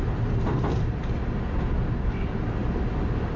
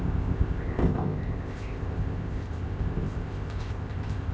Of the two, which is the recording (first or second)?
first